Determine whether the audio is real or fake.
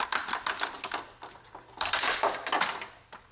real